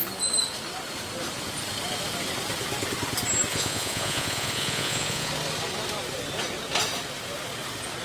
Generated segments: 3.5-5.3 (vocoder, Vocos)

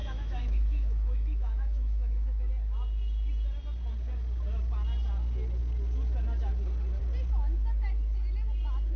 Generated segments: 0.0-2.5 (autoencoder, DAC-VAE)

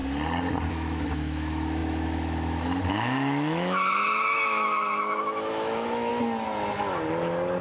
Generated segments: 0.7-6.1 (autoencoder, DAC-VAE)

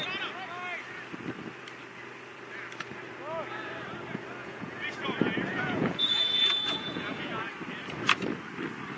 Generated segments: 4.4-5.0 (vocoder, Vocos); 5.5-7.3

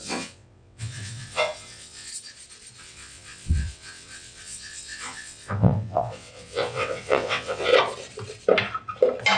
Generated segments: 0.0-2.1 (vocoder, WaveNeXt); 2.8-7.7

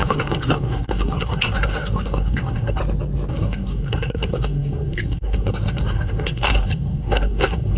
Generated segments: 0.0-2.8 (codec, SNAC); 3.3-7.8